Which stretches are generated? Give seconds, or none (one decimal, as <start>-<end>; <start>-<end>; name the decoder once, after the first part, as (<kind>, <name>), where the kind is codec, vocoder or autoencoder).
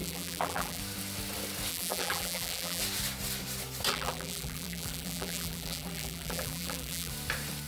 0.0-0.8 (vocoder, BigVGAN v2); 1.7-2.8; 3.9-7.1